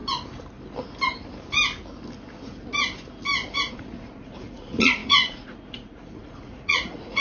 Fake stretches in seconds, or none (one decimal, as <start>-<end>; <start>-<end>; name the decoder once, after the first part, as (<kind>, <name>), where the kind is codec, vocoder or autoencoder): 3.7-7.2 (vocoder, Vocos)